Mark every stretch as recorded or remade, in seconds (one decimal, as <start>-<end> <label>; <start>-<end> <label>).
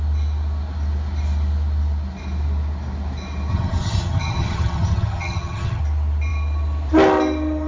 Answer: 0.0-3.5 recorded; 3.5-5.8 remade; 5.8-7.7 recorded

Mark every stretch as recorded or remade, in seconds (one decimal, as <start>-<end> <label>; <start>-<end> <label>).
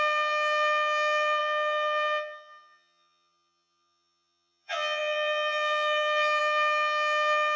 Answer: 0.0-7.6 remade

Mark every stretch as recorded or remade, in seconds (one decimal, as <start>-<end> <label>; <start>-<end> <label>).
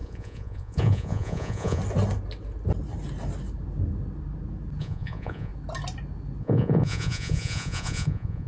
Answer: 0.0-1.8 remade; 1.8-4.8 recorded; 4.8-5.5 remade; 5.5-6.4 recorded; 6.4-8.5 remade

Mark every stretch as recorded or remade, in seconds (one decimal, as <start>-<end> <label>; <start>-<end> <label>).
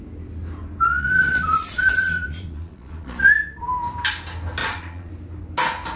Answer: 0.0-0.8 recorded; 0.8-3.6 remade; 3.6-4.6 recorded; 4.6-5.1 remade; 5.1-6.0 recorded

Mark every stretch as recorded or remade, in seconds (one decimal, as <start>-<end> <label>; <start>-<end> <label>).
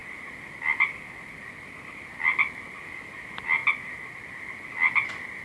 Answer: 0.0-5.4 recorded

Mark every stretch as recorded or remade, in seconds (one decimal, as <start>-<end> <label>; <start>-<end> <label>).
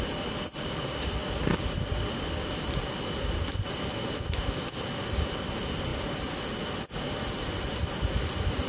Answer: 0.0-8.7 recorded